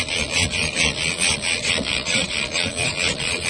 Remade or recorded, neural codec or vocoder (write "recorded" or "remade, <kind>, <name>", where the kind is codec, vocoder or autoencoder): remade, vocoder, Vocos